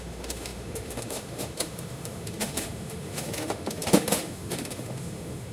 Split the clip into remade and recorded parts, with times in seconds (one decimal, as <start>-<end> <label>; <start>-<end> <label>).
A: 0.0-5.5 remade